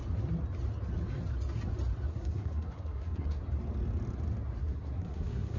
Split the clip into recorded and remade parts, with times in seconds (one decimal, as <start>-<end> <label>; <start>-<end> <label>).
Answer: 0.0-2.1 recorded; 2.1-3.4 remade; 3.4-4.6 recorded; 4.6-5.6 remade